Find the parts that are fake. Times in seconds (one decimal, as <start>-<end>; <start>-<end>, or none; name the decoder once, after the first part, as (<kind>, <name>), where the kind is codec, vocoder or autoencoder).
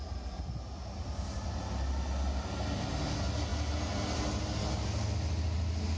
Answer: none